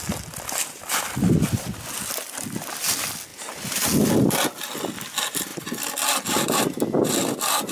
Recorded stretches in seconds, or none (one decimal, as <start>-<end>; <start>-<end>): 0.0-7.7